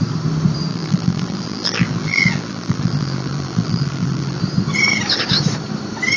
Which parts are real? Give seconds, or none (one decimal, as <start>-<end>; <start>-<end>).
0.0-0.7; 4.4-6.2